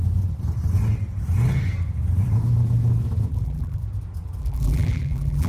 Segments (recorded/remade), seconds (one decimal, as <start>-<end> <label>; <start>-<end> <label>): 0.0-3.3 recorded; 3.3-3.8 remade; 3.8-4.4 recorded; 4.4-5.5 remade